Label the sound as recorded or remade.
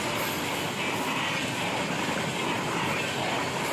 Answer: recorded